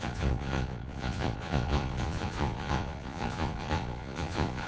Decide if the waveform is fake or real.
fake